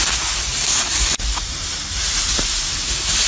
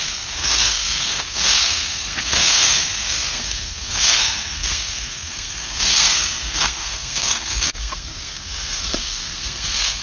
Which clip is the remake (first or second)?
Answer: second